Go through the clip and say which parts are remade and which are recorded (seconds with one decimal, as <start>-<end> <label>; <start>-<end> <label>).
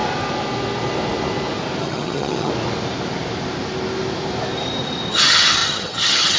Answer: 0.0-1.8 recorded; 1.8-2.5 remade; 2.5-5.1 recorded; 5.1-6.4 remade